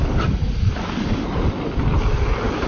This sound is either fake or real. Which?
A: real